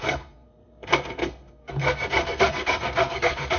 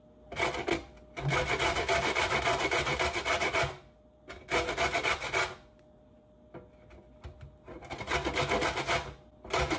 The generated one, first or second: first